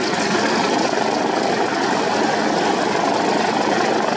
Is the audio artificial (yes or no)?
no